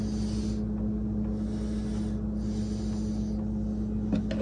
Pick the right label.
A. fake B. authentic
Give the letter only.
B